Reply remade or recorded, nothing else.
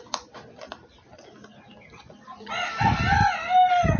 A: recorded